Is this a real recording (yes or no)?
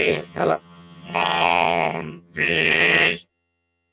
no